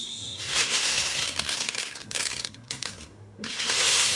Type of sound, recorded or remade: remade